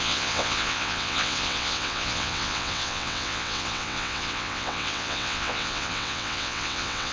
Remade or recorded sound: remade